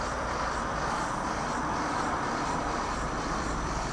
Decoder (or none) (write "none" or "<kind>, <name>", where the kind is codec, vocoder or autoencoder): vocoder, BigVGAN v2